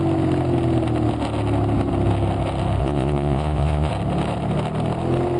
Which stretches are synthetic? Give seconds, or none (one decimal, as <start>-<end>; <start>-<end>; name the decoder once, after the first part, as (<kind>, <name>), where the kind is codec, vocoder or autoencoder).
2.8-3.9 (vocoder, Vocos)